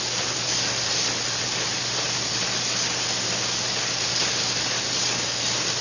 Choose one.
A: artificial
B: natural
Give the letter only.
B